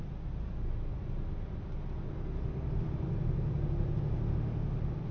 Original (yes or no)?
yes